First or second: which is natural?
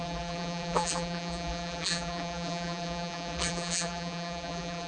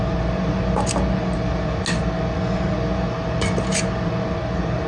second